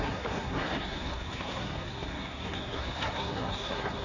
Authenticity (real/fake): fake